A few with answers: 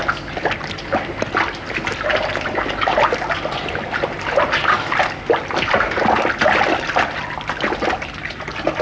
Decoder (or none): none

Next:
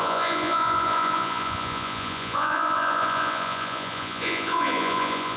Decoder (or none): vocoder, Vocos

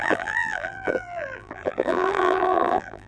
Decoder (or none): vocoder, BigVGAN v2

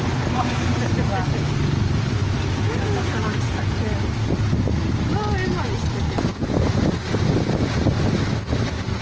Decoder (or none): none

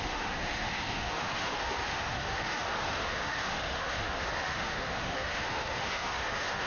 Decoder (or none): autoencoder, DAC-VAE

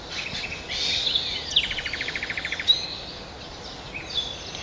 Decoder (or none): none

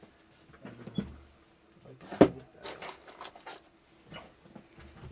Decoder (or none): none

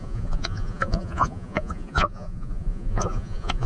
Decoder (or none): vocoder, Vocos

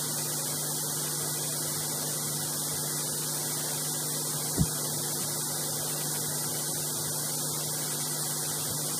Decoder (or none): none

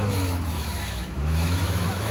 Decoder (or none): autoencoder, DAC-VAE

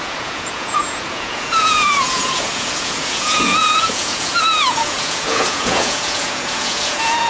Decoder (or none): vocoder, Vocos